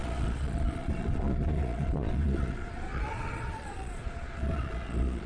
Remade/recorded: remade